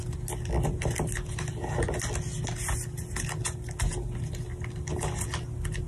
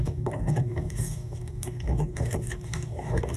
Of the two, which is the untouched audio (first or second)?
first